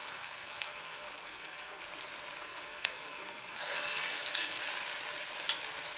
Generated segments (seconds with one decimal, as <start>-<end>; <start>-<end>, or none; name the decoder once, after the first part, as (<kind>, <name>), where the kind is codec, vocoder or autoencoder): 0.0-1.8 (codec, SNAC); 2.4-4.6